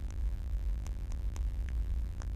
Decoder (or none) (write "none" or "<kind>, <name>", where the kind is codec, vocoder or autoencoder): vocoder, BigVGAN v2